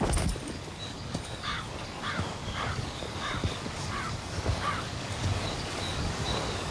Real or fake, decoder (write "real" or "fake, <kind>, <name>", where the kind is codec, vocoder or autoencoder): fake, codec, DAC